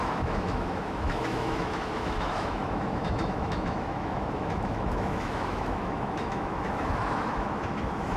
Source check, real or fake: fake